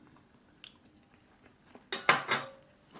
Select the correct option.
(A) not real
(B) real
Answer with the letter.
B